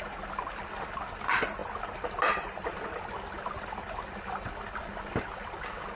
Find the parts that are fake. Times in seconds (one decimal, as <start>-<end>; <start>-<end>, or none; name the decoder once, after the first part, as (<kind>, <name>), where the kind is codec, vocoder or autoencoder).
none